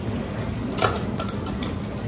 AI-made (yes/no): no